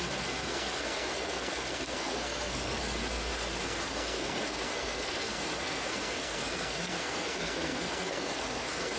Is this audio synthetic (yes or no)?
yes